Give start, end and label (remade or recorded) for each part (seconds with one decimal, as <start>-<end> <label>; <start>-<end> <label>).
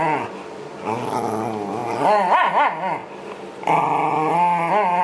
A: 0.0-5.0 recorded